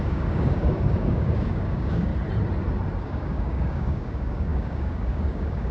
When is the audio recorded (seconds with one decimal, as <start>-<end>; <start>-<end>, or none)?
2.1-3.0